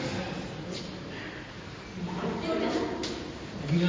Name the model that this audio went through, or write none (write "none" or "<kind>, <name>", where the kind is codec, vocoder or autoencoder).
none